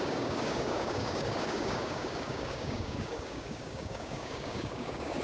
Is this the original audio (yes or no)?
no